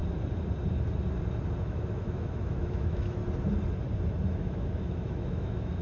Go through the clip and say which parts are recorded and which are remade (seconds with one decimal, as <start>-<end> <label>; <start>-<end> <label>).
0.0-1.6 recorded; 1.6-3.2 remade; 3.2-4.2 recorded; 4.2-5.8 remade

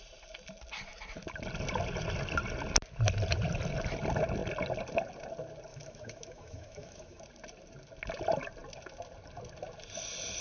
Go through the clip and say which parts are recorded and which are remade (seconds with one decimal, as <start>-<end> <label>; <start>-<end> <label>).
0.0-5.7 recorded; 5.7-7.2 remade; 7.2-10.4 recorded

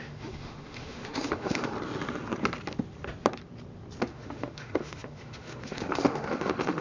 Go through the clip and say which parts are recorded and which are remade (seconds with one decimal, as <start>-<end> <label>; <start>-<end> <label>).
0.0-1.7 remade; 1.7-4.1 recorded; 4.1-6.8 remade